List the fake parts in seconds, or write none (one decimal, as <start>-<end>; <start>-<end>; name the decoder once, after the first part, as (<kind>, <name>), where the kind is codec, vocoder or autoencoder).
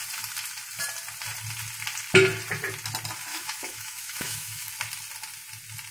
3.3-4.7 (autoencoder, DAC-VAE)